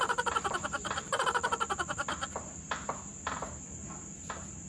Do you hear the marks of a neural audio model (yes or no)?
yes